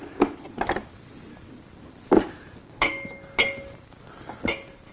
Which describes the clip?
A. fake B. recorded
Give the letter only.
B